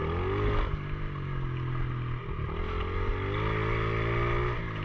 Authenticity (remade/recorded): recorded